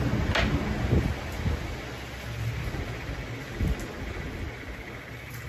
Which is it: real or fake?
real